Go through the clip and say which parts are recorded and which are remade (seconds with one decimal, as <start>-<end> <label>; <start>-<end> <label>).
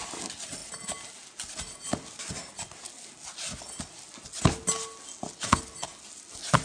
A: 0.0-6.6 recorded